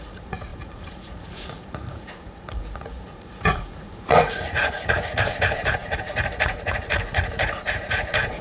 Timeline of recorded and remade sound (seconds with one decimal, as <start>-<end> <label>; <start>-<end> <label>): 0.0-8.4 remade